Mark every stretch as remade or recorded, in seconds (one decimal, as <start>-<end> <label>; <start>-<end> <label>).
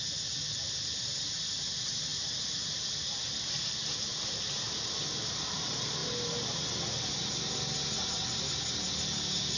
0.0-9.6 recorded